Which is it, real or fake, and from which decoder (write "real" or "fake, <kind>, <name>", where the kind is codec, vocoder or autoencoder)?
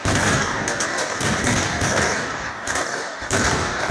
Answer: fake, codec, DAC